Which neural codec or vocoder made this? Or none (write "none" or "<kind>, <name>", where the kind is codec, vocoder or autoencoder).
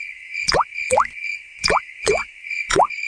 vocoder, Vocos